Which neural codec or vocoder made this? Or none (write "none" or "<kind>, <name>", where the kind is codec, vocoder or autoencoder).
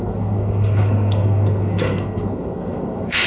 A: codec, SNAC